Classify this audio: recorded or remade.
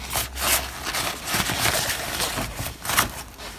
recorded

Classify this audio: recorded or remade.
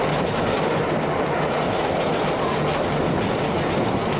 recorded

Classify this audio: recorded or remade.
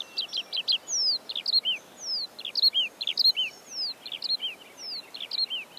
recorded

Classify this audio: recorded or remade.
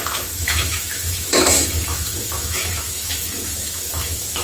remade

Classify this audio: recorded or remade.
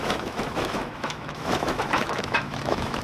remade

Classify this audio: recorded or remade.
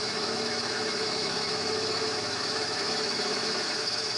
remade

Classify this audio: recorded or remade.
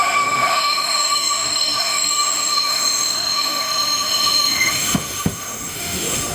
remade